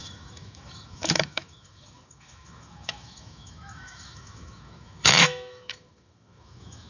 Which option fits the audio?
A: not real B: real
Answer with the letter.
A